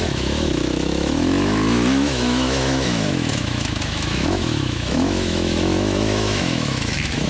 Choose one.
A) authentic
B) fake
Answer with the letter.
B